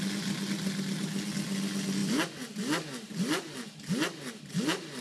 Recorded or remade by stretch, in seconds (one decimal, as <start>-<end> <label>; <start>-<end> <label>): 0.0-5.0 recorded